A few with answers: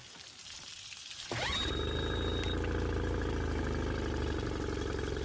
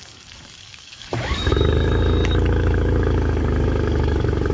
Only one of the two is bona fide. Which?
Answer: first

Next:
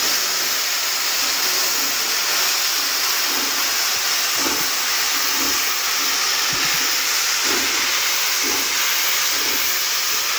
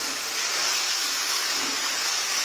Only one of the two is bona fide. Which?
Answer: first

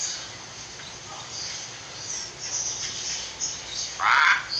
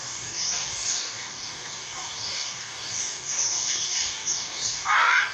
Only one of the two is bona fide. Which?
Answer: first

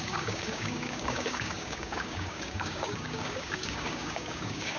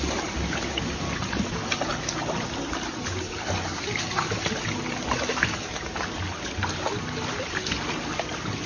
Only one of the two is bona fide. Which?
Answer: second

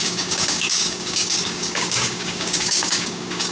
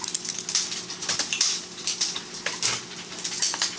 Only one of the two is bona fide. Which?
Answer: second